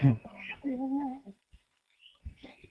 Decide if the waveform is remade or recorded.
remade